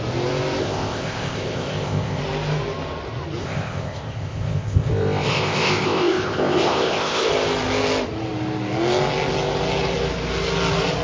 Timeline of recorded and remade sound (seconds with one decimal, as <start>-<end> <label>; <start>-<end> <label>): 0.0-0.6 recorded; 0.6-2.2 remade; 2.2-3.4 recorded; 3.4-7.3 remade; 7.3-11.0 recorded